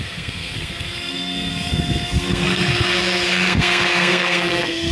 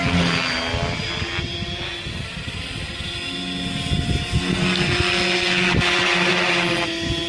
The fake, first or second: first